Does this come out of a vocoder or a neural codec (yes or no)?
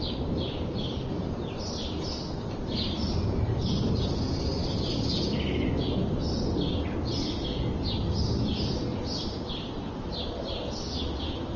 no